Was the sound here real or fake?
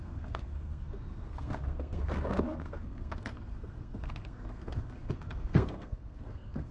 fake